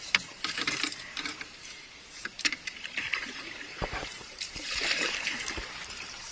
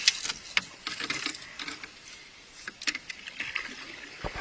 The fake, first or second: first